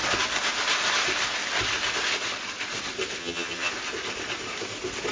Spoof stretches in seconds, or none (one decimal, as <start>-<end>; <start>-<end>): 3.2-3.7